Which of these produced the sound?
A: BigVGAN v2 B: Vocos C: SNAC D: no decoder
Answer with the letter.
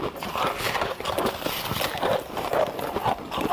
A